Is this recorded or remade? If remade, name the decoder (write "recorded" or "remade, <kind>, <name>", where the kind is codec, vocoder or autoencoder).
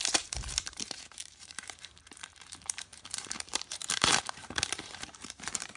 remade, vocoder, BigVGAN v2